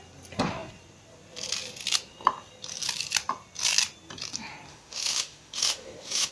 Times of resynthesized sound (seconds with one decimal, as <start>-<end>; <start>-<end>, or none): 4.7-6.3